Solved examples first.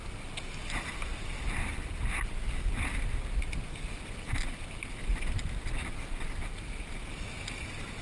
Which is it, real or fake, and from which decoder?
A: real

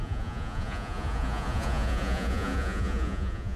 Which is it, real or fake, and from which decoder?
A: fake, vocoder, Vocos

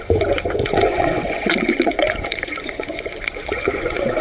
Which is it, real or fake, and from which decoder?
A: fake, vocoder, Vocos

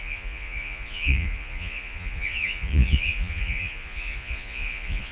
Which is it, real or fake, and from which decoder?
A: fake, vocoder, Vocos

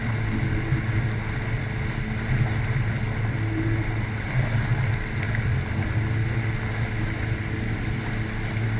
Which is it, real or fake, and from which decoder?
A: real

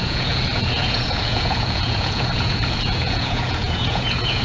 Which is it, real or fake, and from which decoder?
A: fake, vocoder, Vocos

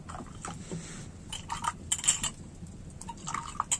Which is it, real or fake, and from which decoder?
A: real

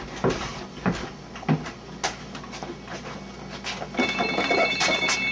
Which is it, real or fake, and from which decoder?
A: real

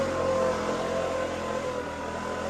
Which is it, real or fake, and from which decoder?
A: real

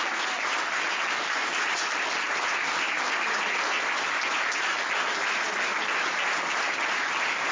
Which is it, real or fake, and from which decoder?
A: real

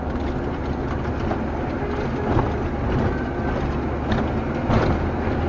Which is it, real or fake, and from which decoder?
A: real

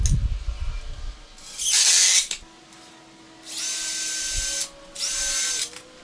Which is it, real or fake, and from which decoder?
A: real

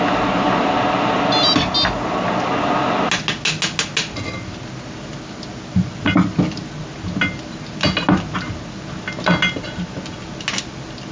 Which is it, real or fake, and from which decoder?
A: real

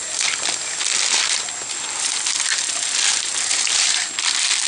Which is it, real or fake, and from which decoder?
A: real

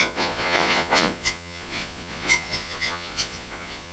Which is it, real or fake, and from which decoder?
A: fake, vocoder, Vocos